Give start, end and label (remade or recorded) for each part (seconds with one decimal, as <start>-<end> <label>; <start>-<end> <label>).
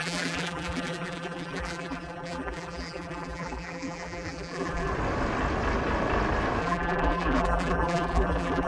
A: 0.0-4.9 remade; 4.9-6.6 recorded; 6.6-8.7 remade